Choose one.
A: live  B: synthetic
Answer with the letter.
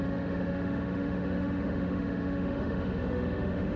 B